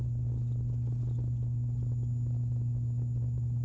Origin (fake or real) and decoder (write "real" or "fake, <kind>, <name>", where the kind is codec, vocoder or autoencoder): real